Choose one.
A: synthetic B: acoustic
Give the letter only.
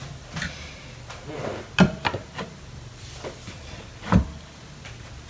B